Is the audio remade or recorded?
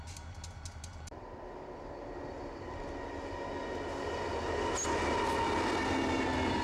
recorded